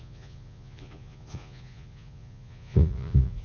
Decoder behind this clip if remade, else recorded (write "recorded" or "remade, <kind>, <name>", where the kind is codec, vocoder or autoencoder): remade, vocoder, Vocos